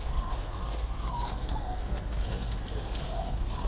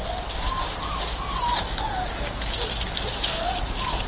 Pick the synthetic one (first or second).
first